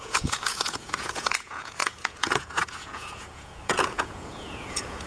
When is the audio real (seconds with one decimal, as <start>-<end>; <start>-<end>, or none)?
none